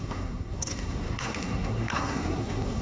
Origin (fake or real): fake